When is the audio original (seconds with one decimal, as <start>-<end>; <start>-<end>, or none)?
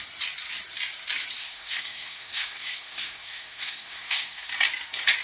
0.0-1.4; 4.5-5.2